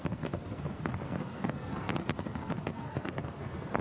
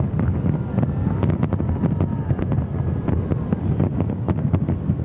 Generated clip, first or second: first